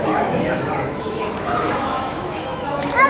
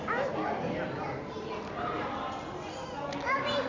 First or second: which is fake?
first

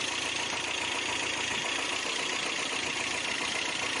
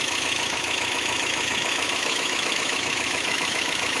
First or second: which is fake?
second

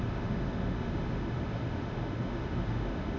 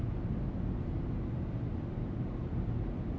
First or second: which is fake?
first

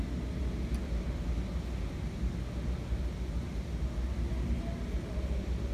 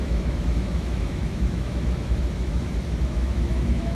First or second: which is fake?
second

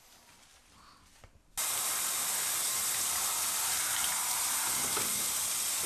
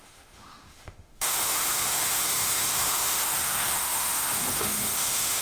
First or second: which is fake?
second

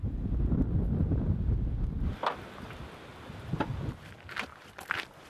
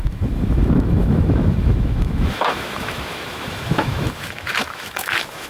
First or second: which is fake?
second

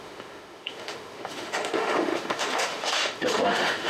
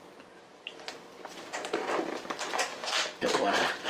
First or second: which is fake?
first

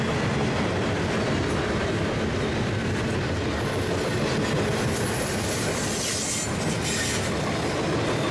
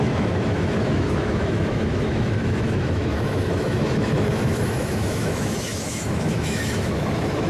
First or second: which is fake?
second